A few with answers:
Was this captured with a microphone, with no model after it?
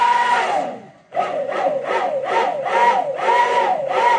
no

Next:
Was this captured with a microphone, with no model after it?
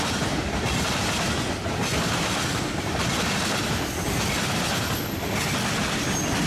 yes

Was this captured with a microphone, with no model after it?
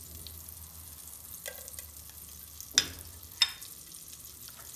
yes